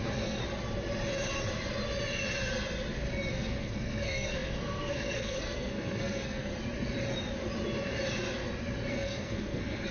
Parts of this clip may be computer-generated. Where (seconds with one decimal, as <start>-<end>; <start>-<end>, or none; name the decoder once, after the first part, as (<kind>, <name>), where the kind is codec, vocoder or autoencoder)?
0.0-0.4 (codec, SNAC); 3.3-6.5; 8.9-9.9